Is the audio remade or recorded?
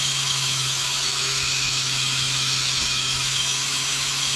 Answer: remade